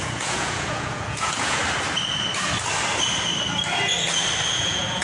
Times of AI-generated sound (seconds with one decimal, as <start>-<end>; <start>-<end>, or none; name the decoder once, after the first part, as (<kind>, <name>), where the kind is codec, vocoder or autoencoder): 0.0-1.6 (vocoder, Vocos); 4.6-5.0